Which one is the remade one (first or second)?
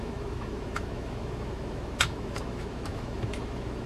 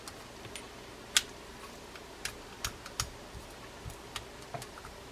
first